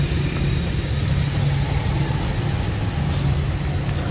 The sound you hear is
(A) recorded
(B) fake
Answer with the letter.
A